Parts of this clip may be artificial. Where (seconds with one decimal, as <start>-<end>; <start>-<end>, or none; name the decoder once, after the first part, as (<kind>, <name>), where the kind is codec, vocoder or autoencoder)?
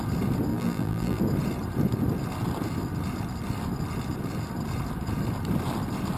0.5-1.2 (vocoder, BigVGAN v2)